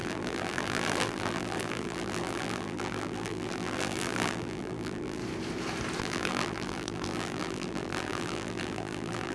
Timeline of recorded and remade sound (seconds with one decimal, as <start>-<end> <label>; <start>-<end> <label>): 0.0-5.2 remade; 5.2-6.0 recorded; 6.0-9.3 remade